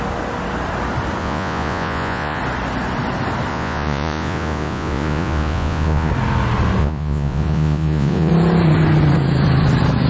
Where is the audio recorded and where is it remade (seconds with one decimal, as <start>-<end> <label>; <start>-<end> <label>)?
0.0-1.2 recorded; 1.2-2.4 remade; 2.4-3.5 recorded; 3.5-6.1 remade; 6.1-6.8 recorded; 6.8-8.3 remade; 8.3-10.1 recorded